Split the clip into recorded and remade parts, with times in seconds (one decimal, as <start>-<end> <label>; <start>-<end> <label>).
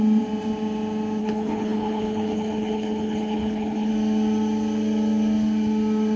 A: 0.0-1.2 recorded; 1.2-3.9 remade; 3.9-6.2 recorded